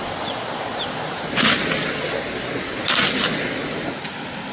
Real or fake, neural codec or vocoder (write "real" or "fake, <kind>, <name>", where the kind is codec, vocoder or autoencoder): real